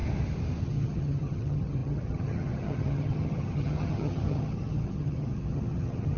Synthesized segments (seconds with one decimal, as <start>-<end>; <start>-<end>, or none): 0.6-6.2

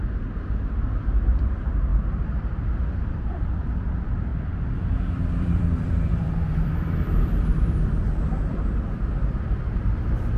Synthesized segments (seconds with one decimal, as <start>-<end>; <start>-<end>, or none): 0.0-10.4

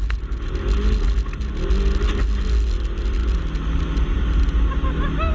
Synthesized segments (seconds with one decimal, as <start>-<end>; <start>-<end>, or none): none

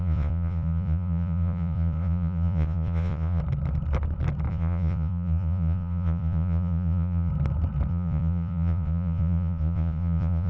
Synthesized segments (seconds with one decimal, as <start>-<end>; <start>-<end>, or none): 0.0-3.4; 4.5-7.3; 7.9-10.5

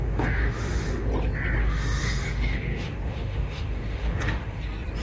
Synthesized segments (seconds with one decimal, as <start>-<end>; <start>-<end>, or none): 0.0-1.1; 1.6-4.6

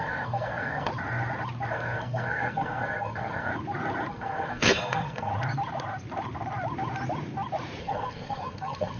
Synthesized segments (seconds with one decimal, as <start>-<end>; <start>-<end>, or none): 0.0-0.9; 1.7-3.5; 4.1-5.3; 7.8-9.0

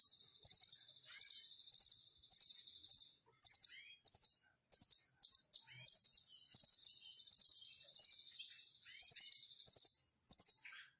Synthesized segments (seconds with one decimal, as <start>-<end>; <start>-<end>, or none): none